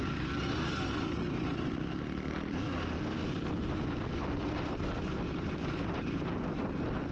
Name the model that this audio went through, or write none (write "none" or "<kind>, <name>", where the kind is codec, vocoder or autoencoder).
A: none